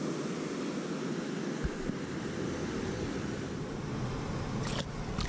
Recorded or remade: recorded